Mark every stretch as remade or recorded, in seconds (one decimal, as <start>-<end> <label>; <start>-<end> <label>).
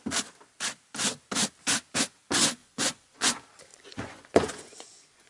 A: 0.0-2.6 recorded; 2.6-3.3 remade; 3.3-3.7 recorded; 3.7-5.3 remade